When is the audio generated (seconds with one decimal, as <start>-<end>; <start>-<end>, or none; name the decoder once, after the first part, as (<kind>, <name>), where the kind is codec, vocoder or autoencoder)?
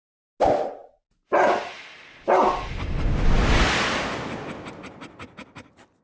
none